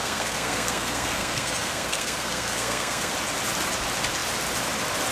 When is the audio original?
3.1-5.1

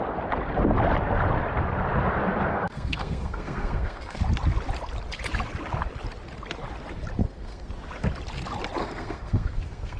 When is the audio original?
0.0-2.5; 4.2-7.2; 7.7-8.8

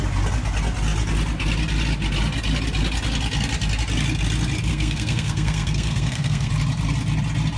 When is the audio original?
0.0-4.7; 6.5-7.6

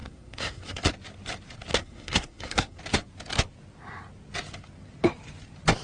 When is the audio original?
0.8-1.7; 2.8-5.8

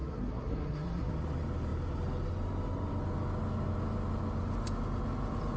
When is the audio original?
1.1-5.6